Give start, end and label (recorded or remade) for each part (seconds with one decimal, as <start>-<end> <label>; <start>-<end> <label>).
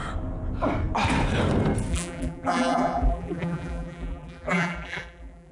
0.0-1.9 recorded; 1.9-5.5 remade